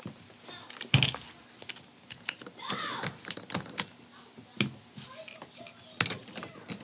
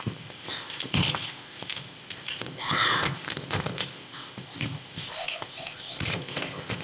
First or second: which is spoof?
second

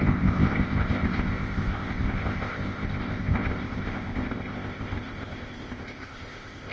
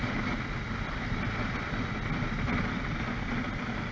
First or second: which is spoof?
first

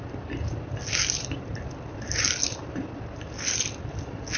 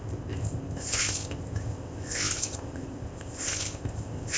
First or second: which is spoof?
second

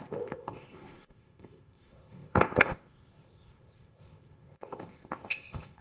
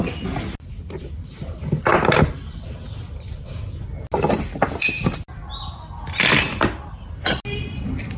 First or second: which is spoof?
first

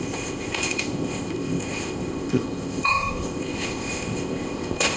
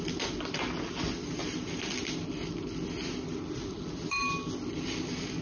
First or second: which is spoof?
first